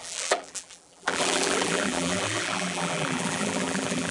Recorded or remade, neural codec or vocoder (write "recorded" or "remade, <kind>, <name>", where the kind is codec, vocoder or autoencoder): remade, vocoder, BigVGAN v2